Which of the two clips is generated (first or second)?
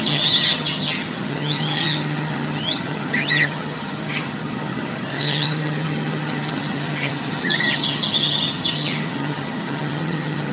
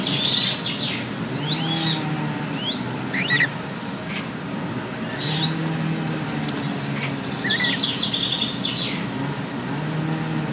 first